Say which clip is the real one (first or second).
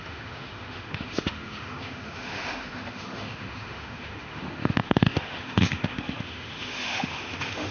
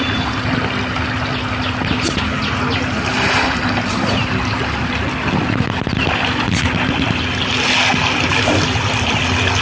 second